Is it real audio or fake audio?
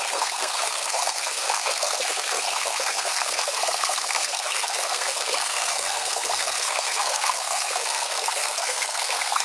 fake